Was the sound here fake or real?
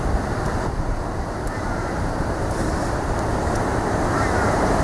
fake